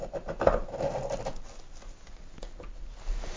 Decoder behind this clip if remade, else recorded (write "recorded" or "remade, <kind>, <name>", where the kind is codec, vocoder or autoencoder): recorded